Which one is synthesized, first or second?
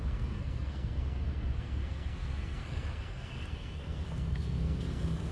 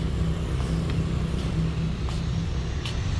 first